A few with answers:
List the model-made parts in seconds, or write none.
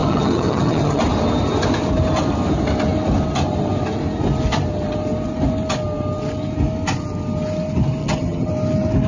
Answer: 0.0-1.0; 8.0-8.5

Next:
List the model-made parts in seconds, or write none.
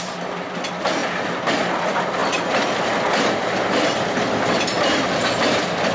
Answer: none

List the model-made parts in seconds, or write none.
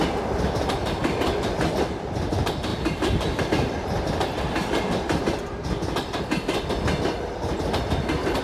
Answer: 2.7-3.4; 5.8-6.6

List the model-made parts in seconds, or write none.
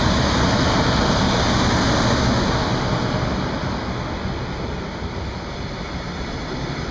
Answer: none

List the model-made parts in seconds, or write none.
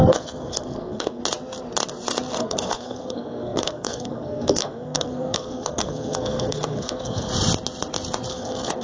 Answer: 0.0-1.2; 2.4-7.3; 8.3-8.8